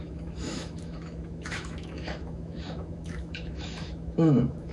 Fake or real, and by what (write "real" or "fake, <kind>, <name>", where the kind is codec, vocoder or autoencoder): fake, autoencoder, DAC-VAE